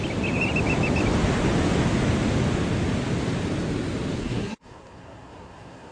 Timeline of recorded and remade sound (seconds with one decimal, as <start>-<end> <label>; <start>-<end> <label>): 0.0-4.2 recorded; 4.2-5.9 remade